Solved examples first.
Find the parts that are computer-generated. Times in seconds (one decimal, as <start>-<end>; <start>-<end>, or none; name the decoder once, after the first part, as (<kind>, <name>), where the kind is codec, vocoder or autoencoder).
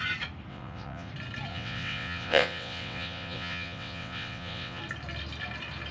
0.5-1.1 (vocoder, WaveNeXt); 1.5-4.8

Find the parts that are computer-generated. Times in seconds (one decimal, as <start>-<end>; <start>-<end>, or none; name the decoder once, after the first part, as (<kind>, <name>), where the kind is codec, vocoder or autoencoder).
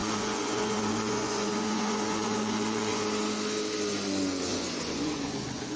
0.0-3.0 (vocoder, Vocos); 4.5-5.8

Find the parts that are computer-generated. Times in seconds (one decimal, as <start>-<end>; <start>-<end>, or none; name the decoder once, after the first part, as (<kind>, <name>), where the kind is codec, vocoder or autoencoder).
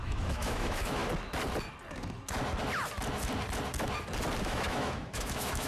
0.0-1.0 (autoencoder, DAC-VAE); 4.4-5.7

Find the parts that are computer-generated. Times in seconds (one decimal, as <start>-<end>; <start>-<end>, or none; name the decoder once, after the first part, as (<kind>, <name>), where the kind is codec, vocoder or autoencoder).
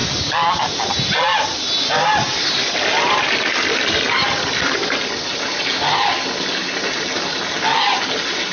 none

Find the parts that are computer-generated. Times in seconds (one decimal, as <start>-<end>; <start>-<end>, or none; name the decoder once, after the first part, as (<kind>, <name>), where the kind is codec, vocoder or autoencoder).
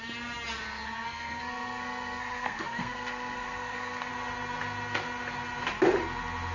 1.1-4.1 (codec, SNAC)